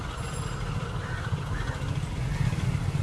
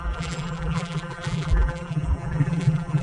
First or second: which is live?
first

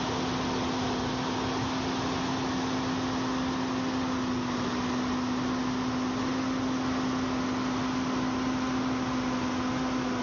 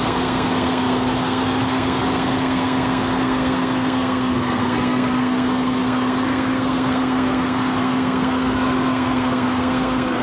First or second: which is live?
first